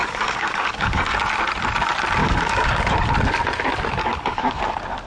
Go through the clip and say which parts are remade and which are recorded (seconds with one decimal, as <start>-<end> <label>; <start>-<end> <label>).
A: 0.0-1.2 remade; 1.2-2.2 recorded; 2.2-2.8 remade; 2.8-4.0 recorded; 4.0-4.6 remade; 4.6-5.1 recorded